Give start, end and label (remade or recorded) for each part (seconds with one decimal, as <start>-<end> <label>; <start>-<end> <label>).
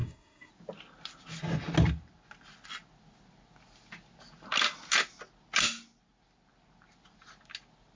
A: 0.0-0.5 remade; 0.5-8.0 recorded